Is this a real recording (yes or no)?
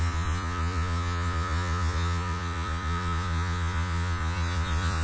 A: no